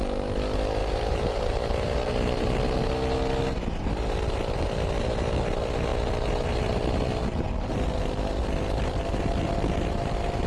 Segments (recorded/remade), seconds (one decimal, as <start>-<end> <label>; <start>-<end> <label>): 0.0-0.8 recorded; 0.8-2.1 remade; 2.1-10.5 recorded

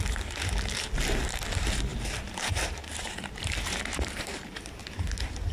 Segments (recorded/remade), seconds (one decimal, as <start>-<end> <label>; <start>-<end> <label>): 0.0-1.9 recorded; 1.9-4.8 remade; 4.8-5.5 recorded

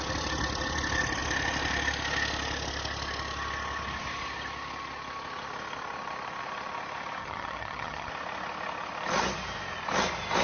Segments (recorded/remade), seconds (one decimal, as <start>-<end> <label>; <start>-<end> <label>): 0.0-7.2 recorded; 7.2-8.1 remade; 8.1-10.4 recorded

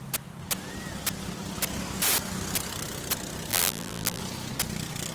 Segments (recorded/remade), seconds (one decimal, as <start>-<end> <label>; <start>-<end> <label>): 0.0-3.5 recorded; 3.5-4.2 remade; 4.2-5.1 recorded

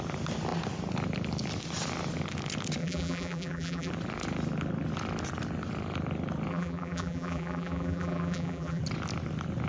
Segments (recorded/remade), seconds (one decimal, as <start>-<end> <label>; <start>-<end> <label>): 0.0-2.8 recorded; 2.8-3.9 remade; 3.9-6.5 recorded; 6.5-8.8 remade; 8.8-9.7 recorded